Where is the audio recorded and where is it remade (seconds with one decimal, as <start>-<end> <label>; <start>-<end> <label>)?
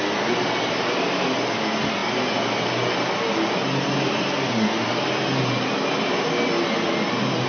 0.0-7.5 recorded